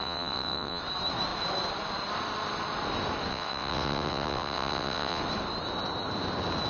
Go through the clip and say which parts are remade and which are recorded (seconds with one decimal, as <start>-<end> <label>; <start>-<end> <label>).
0.0-0.8 remade; 0.8-3.3 recorded; 3.3-5.2 remade; 5.2-6.7 recorded